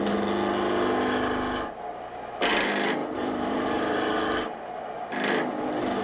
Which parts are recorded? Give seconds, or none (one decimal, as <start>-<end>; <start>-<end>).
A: 0.0-3.0; 4.1-6.0